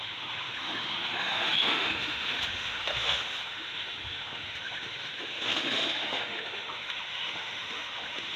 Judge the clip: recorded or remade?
remade